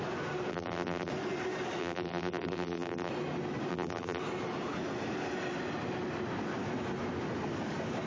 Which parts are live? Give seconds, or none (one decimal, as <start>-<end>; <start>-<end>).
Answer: 0.0-0.5; 1.1-1.8; 3.1-3.7; 4.2-8.1